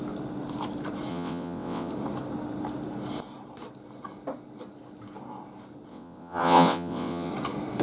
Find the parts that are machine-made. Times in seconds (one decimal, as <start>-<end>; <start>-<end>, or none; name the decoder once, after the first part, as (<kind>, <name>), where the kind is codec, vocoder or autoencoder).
1.1-1.9 (vocoder, WaveNeXt); 5.9-7.3